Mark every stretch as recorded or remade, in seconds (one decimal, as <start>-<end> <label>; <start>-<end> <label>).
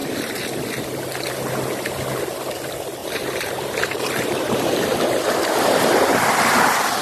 0.0-0.5 remade; 0.5-3.0 recorded; 3.0-5.6 remade; 5.6-7.0 recorded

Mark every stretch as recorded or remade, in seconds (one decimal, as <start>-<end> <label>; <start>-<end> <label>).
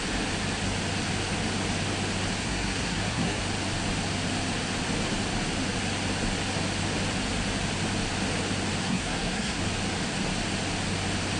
0.0-2.4 recorded; 2.4-3.4 remade; 3.4-8.8 recorded; 8.8-9.6 remade; 9.6-11.4 recorded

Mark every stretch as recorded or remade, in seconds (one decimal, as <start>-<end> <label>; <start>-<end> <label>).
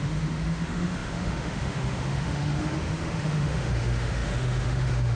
0.0-5.2 remade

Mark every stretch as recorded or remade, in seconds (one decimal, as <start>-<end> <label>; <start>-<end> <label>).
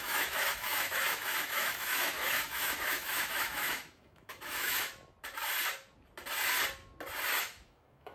0.0-4.9 remade; 4.9-7.4 recorded; 7.4-8.1 remade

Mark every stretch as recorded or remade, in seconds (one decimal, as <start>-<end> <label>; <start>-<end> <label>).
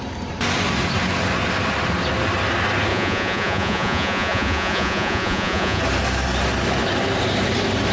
0.0-2.9 recorded; 2.9-5.8 remade; 5.8-7.9 recorded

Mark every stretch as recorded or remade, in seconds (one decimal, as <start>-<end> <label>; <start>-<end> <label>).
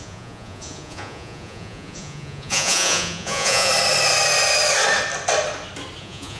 0.0-3.7 remade; 3.7-6.0 recorded; 6.0-6.4 remade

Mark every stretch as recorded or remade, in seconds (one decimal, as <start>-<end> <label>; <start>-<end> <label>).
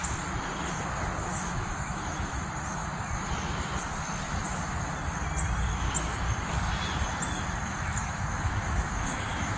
0.0-1.2 recorded; 1.2-2.4 remade; 2.4-7.7 recorded; 7.7-9.6 remade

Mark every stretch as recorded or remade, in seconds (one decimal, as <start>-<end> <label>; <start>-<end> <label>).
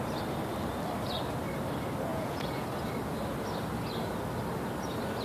0.0-2.1 recorded; 2.1-2.6 remade; 2.6-5.2 recorded